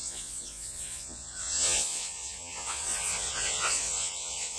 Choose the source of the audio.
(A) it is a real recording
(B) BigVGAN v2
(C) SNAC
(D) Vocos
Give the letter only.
D